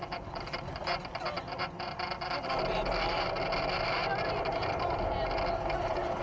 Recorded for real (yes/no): yes